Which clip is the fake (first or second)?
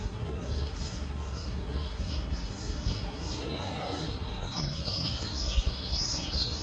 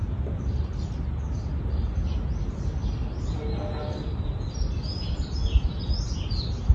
first